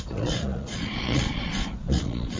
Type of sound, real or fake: fake